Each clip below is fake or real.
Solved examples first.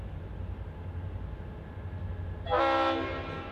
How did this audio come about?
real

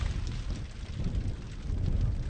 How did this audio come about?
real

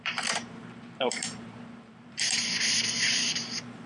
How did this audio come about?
fake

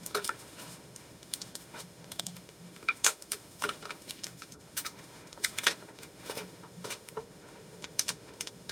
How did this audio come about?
fake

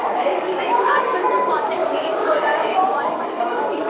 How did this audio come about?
fake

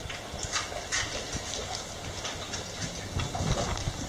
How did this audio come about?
real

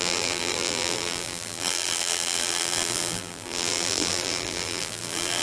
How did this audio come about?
fake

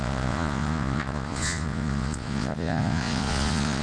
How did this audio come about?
fake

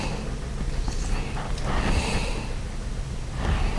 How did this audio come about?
real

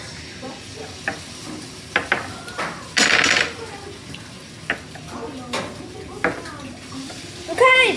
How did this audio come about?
real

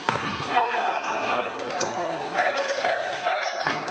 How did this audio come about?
fake